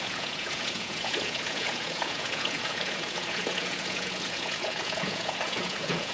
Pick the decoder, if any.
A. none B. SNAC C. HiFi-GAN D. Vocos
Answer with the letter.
D